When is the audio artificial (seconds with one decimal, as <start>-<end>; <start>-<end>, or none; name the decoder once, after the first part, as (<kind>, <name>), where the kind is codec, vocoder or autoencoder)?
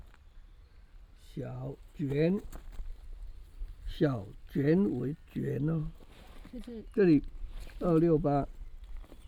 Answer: none